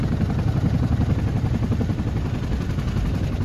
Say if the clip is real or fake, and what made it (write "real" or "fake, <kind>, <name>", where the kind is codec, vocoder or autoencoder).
real